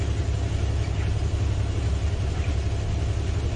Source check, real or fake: real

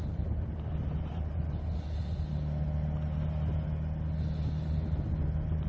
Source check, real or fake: real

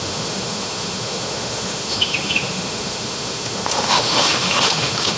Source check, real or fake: fake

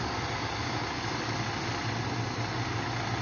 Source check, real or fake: real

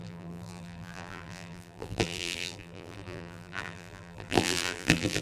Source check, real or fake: fake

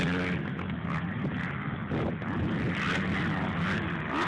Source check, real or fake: real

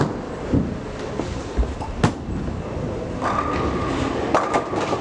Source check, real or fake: real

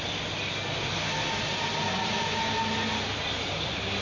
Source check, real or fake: real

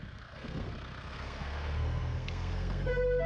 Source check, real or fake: fake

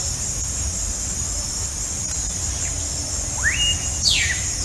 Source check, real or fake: real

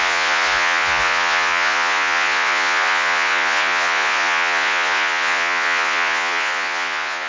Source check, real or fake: fake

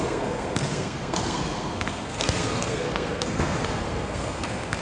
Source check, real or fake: fake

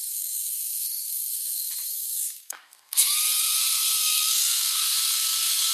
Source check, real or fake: fake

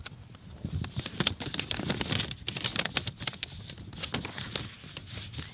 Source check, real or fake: real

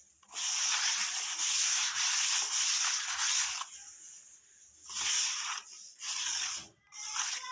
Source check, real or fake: real